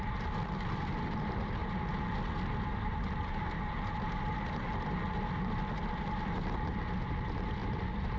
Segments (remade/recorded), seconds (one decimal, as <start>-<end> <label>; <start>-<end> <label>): 0.0-8.2 recorded